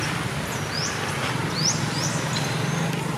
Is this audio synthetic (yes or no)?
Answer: no